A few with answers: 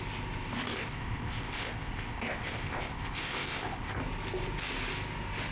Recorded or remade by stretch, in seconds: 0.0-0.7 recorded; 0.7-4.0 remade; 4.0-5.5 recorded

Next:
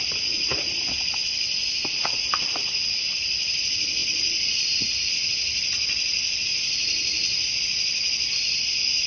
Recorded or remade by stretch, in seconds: 0.0-9.1 recorded

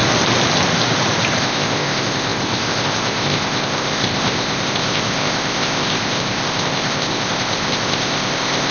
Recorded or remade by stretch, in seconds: 0.0-1.4 recorded; 1.4-8.7 remade

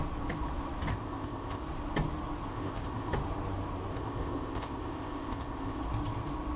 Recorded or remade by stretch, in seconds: 0.0-0.9 recorded; 0.9-1.6 remade; 1.6-2.5 recorded; 2.5-3.1 remade; 3.1-3.9 recorded; 3.9-5.8 remade; 5.8-6.6 recorded

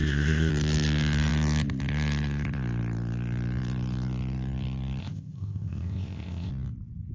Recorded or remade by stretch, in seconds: 0.0-0.5 remade; 0.5-5.0 recorded; 5.0-6.5 remade; 6.5-7.1 recorded

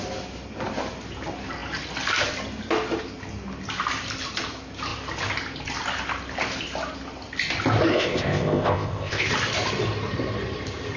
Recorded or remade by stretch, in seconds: 0.0-7.9 recorded; 7.9-9.3 remade; 9.3-11.0 recorded

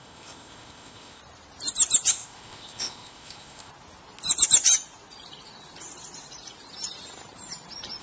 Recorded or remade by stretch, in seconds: 0.0-1.2 remade; 1.2-2.1 recorded; 2.1-3.7 remade; 3.7-8.0 recorded

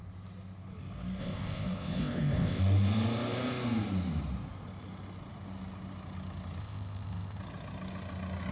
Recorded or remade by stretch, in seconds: 0.0-1.2 recorded; 1.2-2.6 remade; 2.6-6.6 recorded; 6.6-7.4 remade; 7.4-8.5 recorded